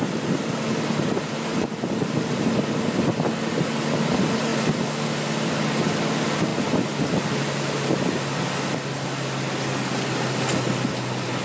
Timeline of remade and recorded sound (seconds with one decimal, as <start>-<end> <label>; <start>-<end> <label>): 0.0-11.4 recorded